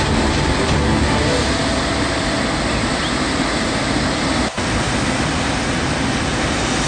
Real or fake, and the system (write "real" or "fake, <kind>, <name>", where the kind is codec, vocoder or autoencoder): real